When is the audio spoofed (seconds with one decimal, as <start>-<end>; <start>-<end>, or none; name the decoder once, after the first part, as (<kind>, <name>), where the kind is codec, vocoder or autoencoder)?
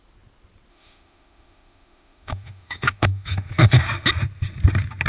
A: 0.7-3.8 (autoencoder, DAC-VAE)